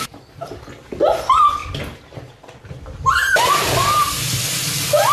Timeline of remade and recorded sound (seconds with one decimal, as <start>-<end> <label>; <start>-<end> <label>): 0.0-5.1 recorded